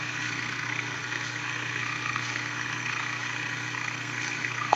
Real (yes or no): no